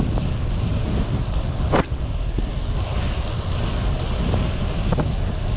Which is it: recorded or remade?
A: recorded